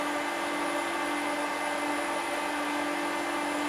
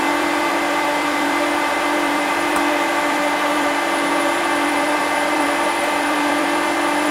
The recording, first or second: first